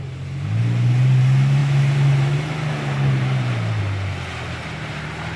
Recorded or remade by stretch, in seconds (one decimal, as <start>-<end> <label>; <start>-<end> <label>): 0.0-5.4 recorded